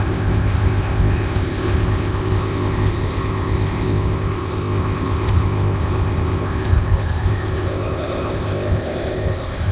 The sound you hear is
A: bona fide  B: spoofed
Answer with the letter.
B